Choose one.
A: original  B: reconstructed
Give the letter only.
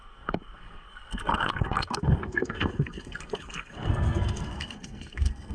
B